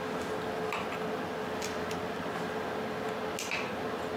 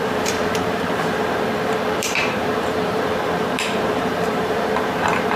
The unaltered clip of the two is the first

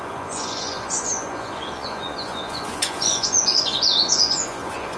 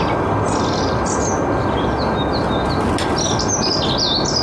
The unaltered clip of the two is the second